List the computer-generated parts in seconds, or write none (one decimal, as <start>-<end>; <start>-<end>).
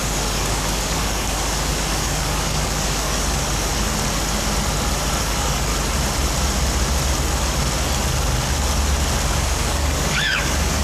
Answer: 0.0-3.7; 5.2-5.7; 9.3-10.8